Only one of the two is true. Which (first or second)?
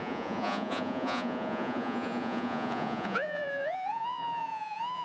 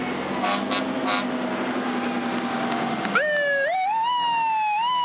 second